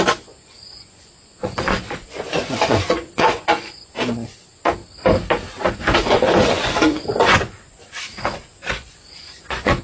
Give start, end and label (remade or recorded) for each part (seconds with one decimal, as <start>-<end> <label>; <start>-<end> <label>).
0.0-4.8 remade; 4.8-6.0 recorded; 6.0-9.8 remade